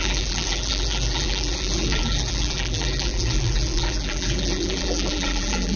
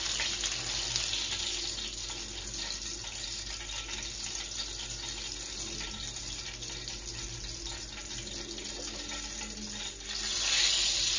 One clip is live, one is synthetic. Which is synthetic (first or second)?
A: first